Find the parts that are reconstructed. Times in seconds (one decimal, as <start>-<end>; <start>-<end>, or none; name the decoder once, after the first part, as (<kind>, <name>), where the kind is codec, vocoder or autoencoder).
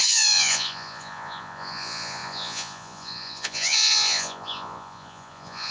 0.0-5.7 (vocoder, Vocos)